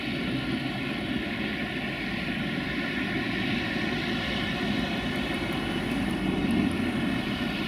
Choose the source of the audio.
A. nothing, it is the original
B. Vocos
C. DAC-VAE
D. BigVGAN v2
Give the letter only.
A